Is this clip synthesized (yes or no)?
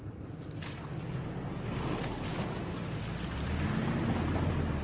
no